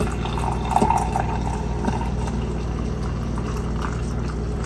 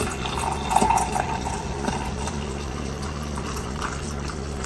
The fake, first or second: second